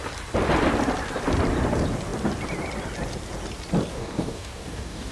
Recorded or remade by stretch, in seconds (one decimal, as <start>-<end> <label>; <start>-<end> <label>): 0.0-3.9 recorded; 3.9-5.1 remade